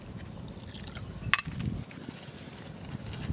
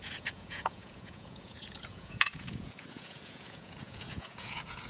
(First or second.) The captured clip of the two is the first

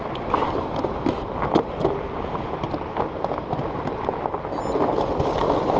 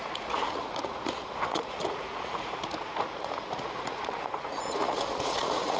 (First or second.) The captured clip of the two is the first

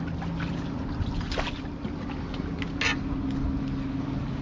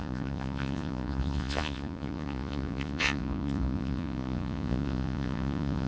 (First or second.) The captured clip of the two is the first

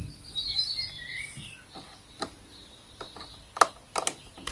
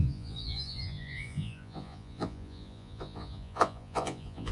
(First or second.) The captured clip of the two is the first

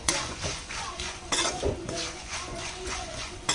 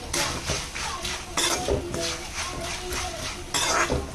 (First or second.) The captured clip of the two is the second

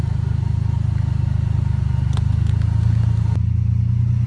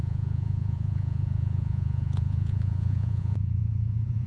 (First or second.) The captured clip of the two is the first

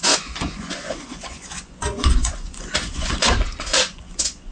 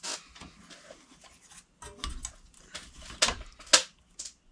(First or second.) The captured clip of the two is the second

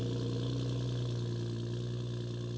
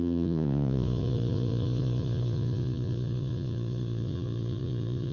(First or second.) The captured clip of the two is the first